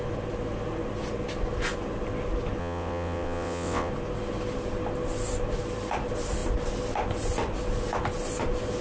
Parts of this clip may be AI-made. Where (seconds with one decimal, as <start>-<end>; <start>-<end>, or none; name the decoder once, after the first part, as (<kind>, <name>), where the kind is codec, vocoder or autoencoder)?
2.6-3.9 (vocoder, WaveNeXt)